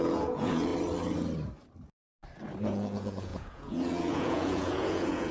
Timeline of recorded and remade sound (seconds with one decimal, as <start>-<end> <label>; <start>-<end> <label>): 0.0-0.7 remade; 0.7-2.6 recorded; 2.6-5.3 remade